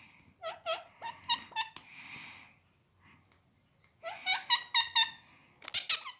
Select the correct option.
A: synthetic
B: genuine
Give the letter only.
B